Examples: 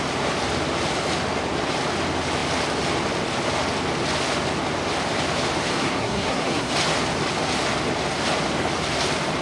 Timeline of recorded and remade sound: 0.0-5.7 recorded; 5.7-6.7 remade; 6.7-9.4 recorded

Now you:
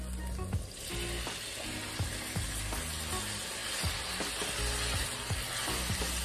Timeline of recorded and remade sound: 0.0-6.2 recorded